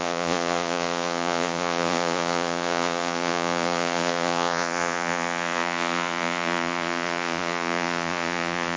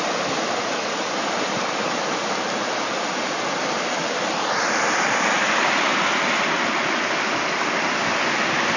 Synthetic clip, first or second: first